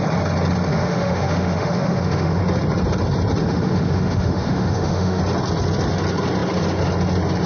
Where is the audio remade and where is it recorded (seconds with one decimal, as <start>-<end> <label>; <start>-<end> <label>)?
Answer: 0.0-0.7 recorded; 0.7-2.4 remade; 2.4-3.4 recorded; 3.4-5.2 remade; 5.2-7.5 recorded